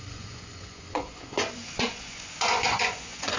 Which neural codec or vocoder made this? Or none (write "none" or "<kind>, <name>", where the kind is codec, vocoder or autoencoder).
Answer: vocoder, Vocos